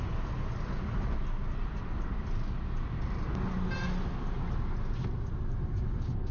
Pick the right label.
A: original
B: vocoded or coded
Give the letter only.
A